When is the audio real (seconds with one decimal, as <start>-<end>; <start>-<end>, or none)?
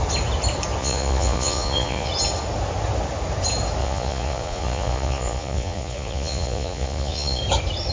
0.0-0.8; 2.1-3.8; 7.4-7.9